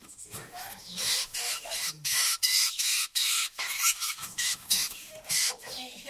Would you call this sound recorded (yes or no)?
no